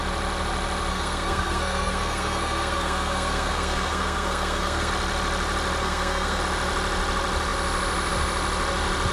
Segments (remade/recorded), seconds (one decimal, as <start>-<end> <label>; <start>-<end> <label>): 0.0-0.9 recorded; 0.9-4.9 remade; 4.9-5.8 recorded; 5.8-6.4 remade; 6.4-9.1 recorded